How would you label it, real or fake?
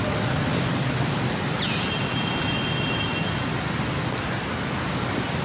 real